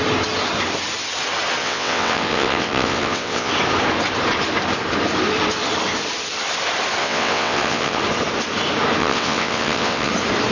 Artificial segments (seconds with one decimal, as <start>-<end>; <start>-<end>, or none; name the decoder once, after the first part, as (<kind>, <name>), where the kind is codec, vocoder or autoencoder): 1.6-3.5 (vocoder, WaveNeXt); 7.0-8.0; 9.0-10.1